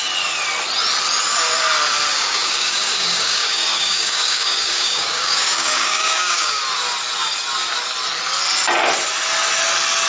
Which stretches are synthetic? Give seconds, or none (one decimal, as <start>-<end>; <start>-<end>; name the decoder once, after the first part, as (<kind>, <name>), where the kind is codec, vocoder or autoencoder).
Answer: 2.1-6.6 (codec, DAC)